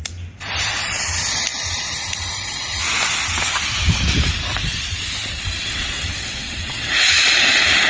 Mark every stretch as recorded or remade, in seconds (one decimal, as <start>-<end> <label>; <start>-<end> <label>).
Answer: 0.0-5.6 recorded; 5.6-6.9 remade; 6.9-7.9 recorded